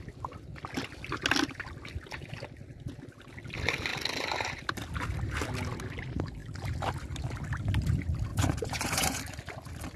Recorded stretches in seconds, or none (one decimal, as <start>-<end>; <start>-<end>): 0.0-8.3; 9.2-10.0